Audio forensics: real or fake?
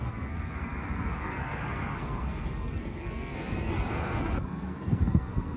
fake